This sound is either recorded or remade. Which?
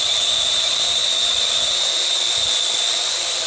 recorded